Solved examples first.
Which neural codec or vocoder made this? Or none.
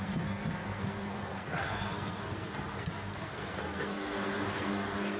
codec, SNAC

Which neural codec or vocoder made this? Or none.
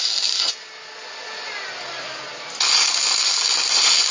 none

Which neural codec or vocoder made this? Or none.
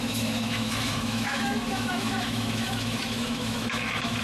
autoencoder, DAC-VAE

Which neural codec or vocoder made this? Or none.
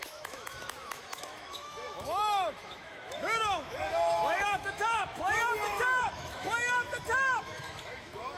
autoencoder, DAC-VAE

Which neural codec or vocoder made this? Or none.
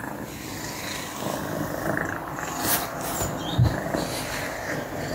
none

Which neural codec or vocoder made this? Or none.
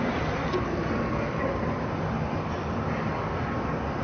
none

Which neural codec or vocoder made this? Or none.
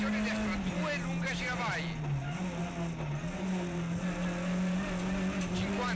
none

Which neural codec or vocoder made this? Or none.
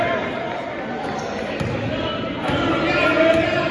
none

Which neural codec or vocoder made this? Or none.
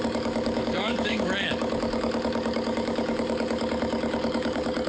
codec, DAC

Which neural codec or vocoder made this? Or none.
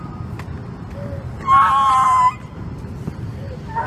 none